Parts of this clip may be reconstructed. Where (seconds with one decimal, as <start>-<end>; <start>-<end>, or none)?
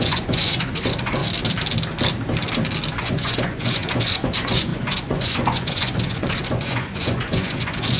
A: 0.0-1.2; 3.0-8.0